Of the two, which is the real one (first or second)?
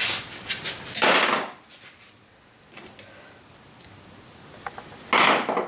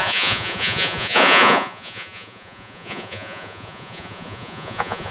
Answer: first